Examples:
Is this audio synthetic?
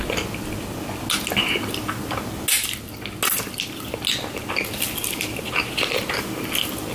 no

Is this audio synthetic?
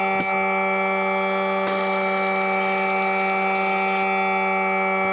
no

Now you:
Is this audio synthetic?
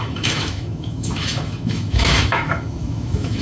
yes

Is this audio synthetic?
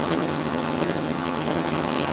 yes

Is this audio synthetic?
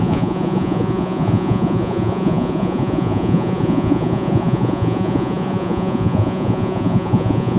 yes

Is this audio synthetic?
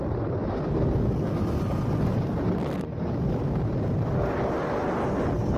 no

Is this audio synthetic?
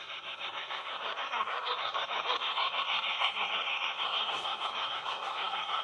yes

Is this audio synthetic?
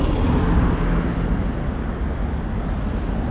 no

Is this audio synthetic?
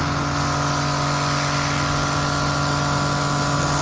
no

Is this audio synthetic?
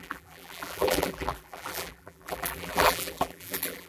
yes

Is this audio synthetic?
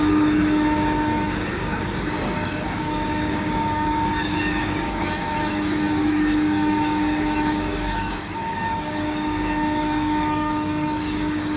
yes